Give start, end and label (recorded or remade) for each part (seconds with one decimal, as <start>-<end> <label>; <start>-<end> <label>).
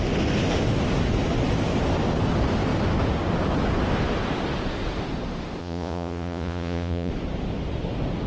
0.0-5.6 recorded; 5.6-7.1 remade; 7.1-8.3 recorded